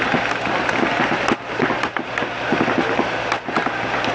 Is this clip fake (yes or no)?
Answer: no